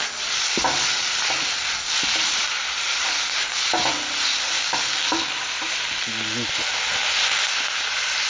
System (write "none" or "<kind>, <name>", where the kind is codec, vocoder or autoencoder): none